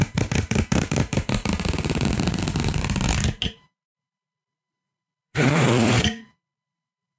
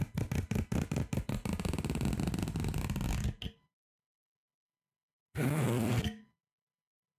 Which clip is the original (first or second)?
second